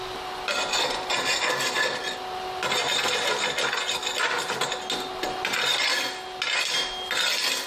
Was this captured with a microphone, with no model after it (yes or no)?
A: yes